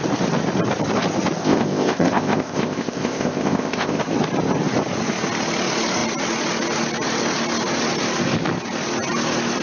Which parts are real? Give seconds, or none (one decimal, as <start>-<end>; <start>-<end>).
0.0-1.4; 4.0-9.6